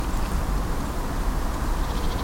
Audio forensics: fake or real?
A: real